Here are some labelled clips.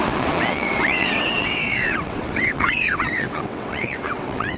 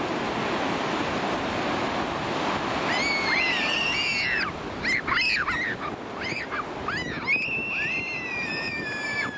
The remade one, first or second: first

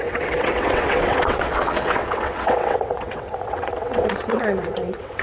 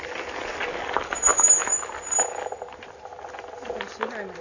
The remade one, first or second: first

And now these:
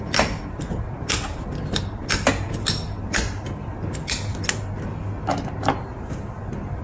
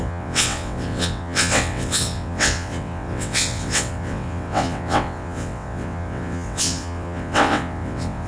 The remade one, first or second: second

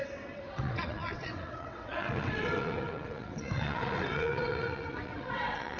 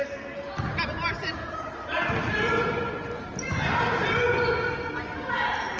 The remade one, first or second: first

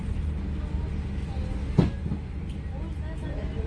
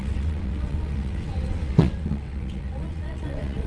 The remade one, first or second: second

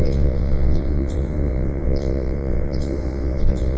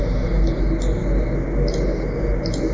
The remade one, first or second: first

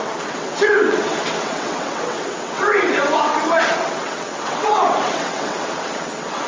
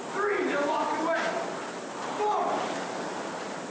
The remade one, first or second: first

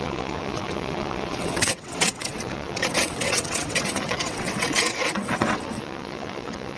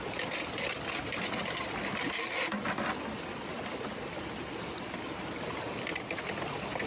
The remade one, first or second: first